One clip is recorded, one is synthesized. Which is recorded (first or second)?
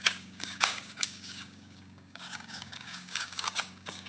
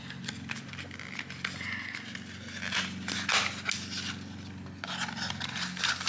second